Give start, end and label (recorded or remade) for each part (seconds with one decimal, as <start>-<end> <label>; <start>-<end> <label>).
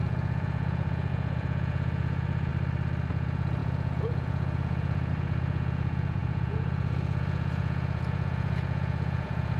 0.0-2.5 remade; 2.5-3.1 recorded; 3.1-9.6 remade